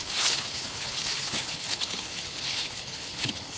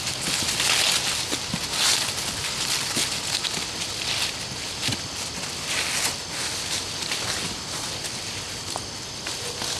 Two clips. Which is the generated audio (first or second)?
first